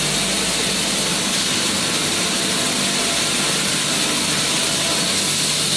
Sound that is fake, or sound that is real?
real